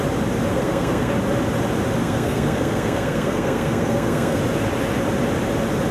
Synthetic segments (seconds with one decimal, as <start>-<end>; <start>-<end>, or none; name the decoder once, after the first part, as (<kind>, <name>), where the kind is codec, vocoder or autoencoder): 0.5-1.1 (codec, SNAC); 2.0-4.4